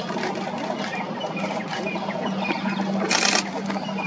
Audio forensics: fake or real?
real